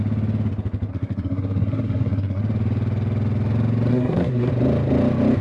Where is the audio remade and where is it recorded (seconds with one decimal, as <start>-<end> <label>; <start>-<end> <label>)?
0.0-0.9 recorded; 0.9-2.4 remade; 2.4-3.9 recorded; 3.9-4.5 remade; 4.5-5.4 recorded